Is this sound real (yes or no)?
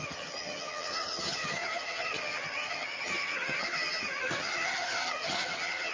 no